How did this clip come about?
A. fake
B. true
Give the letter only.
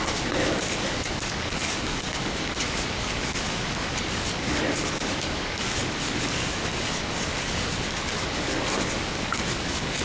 A